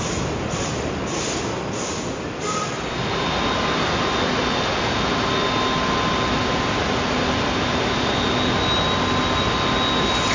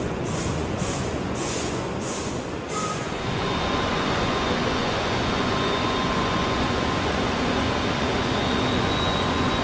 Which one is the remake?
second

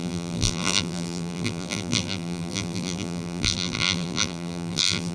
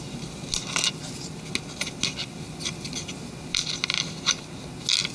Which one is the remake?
first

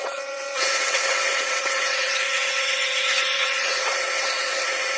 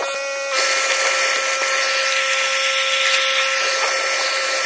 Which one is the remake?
first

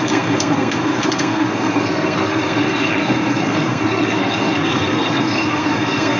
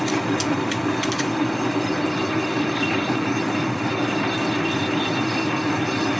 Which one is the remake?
first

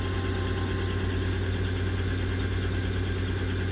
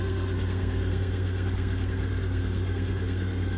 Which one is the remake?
second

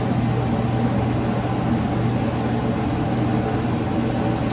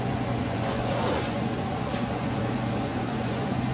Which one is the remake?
second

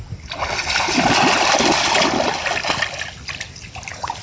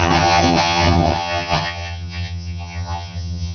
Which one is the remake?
second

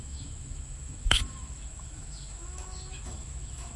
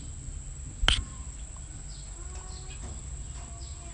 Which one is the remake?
first